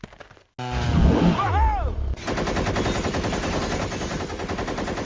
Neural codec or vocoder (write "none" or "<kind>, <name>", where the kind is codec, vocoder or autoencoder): none